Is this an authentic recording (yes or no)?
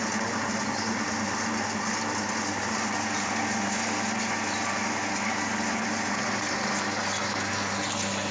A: yes